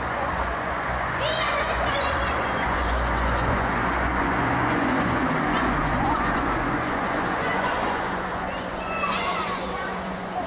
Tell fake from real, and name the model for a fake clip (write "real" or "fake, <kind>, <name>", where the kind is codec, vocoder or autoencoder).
fake, vocoder, Vocos